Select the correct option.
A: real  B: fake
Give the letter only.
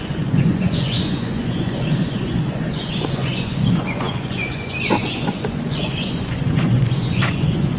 B